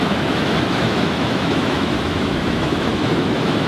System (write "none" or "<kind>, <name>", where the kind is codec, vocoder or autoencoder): autoencoder, DAC-VAE